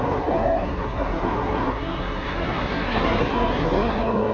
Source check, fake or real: fake